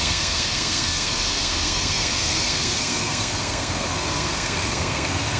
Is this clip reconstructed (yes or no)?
yes